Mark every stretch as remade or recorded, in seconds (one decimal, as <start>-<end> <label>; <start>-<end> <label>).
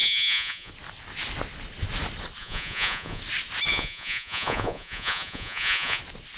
0.0-0.7 remade; 0.7-2.4 recorded; 2.4-3.2 remade; 3.2-3.7 recorded; 3.7-6.0 remade; 6.0-6.4 recorded